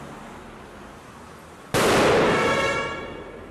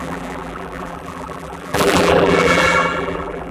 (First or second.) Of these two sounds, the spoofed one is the second